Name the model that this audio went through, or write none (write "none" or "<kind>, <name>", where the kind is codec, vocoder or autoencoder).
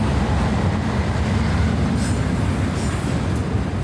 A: none